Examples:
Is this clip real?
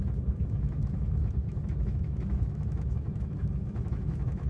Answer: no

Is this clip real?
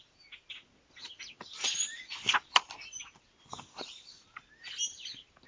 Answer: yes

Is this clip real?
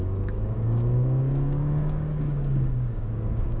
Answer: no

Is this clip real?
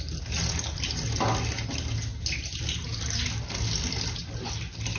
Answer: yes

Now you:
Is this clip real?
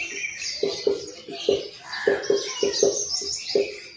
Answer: yes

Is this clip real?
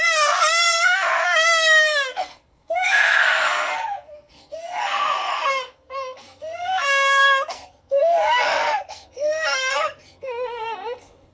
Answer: no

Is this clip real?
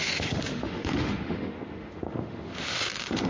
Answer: no